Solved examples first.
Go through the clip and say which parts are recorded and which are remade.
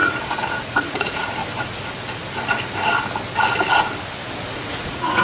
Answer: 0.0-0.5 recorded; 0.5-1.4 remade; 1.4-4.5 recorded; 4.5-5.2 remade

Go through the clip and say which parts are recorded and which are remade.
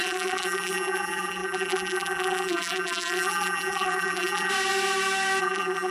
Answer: 0.0-4.5 remade; 4.5-5.4 recorded; 5.4-5.9 remade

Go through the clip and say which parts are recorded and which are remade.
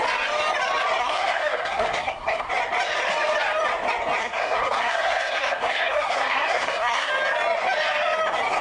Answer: 0.0-1.0 recorded; 1.0-2.5 remade; 2.5-4.2 recorded; 4.2-7.1 remade; 7.1-8.6 recorded